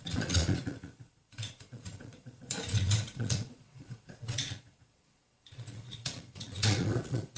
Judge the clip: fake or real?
fake